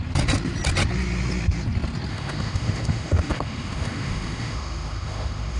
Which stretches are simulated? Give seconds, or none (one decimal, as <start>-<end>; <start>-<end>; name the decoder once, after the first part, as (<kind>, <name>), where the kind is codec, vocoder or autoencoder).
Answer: 2.1-5.6 (autoencoder, DAC-VAE)